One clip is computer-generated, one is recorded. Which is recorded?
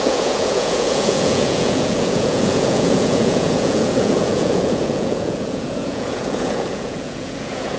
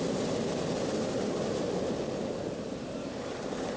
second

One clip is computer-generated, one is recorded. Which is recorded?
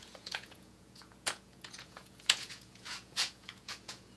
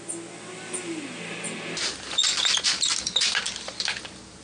second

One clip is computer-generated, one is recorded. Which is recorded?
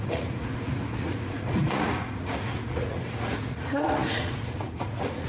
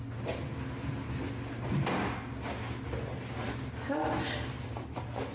second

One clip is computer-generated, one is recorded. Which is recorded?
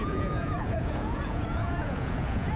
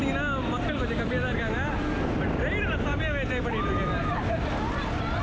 second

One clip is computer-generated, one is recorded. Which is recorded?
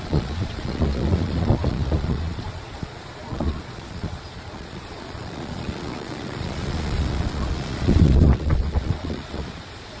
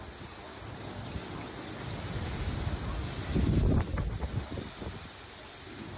second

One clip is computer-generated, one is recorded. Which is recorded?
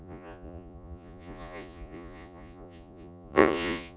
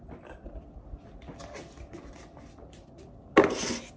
second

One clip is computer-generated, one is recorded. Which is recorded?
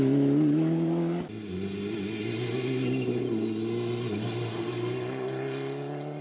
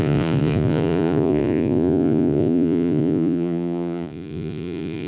first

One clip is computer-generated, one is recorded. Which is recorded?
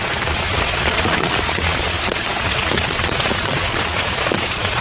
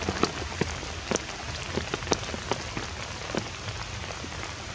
second